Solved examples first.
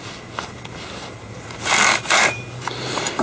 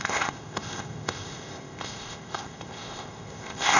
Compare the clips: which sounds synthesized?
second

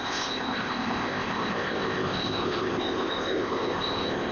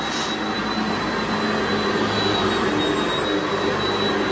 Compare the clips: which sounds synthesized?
first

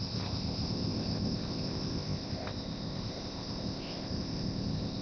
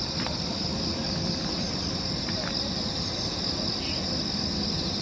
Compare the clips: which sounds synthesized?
first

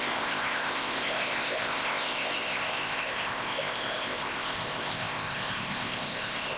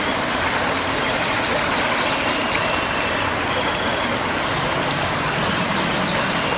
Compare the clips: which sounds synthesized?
first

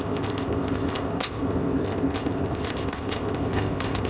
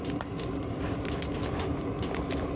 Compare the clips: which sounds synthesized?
first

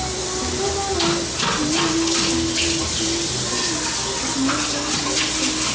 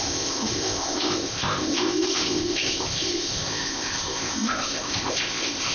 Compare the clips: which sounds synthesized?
second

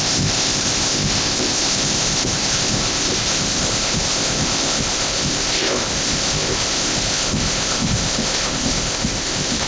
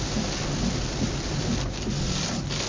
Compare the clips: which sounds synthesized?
first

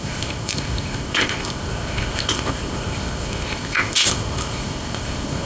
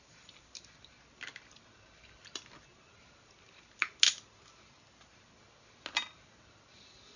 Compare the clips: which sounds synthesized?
first